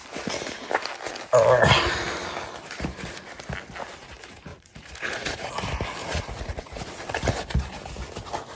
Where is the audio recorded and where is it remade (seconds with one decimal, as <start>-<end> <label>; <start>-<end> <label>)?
0.0-4.5 recorded; 4.5-5.5 remade; 5.5-6.0 recorded; 6.0-6.8 remade; 6.8-8.6 recorded